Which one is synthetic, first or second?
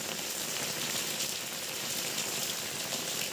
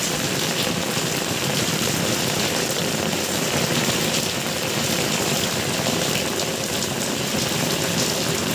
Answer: second